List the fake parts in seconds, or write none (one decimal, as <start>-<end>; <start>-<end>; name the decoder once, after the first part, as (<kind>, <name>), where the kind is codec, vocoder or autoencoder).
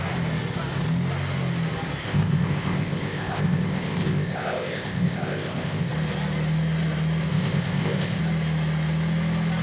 2.0-5.9 (codec, ZipCodec); 7.3-8.2